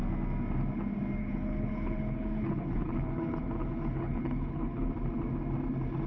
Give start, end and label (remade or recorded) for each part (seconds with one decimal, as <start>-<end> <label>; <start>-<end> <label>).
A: 0.0-1.2 recorded; 1.2-4.9 remade; 4.9-6.1 recorded

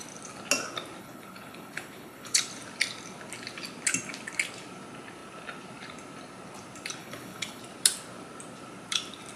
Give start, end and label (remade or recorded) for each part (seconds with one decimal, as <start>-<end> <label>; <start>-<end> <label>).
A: 0.0-1.0 recorded; 1.0-2.4 remade; 2.4-7.0 recorded; 7.0-7.6 remade; 7.6-9.4 recorded

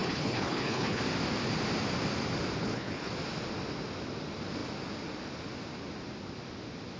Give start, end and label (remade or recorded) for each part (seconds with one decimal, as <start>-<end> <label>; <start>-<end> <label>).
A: 0.0-1.0 remade; 1.0-2.6 recorded; 2.6-3.1 remade; 3.1-7.0 recorded

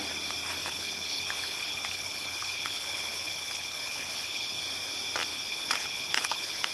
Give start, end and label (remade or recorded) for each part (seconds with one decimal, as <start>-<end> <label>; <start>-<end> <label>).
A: 0.0-0.6 recorded; 0.6-4.6 remade; 4.6-5.3 recorded; 5.3-6.7 remade

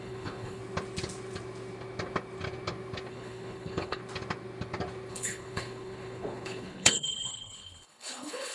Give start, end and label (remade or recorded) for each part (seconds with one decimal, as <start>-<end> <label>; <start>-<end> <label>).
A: 0.0-0.6 remade; 0.6-3.1 recorded; 3.1-4.0 remade; 4.0-5.1 recorded; 5.1-8.5 remade

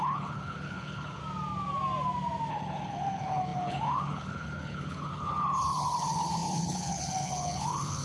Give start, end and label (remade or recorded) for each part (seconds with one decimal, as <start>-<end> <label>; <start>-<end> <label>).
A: 0.0-1.2 remade; 1.2-2.5 recorded; 2.5-8.0 remade

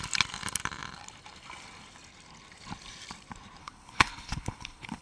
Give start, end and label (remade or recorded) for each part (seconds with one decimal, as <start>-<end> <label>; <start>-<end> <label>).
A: 0.0-3.6 recorded; 3.6-5.0 remade